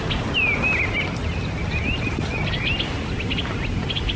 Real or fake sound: real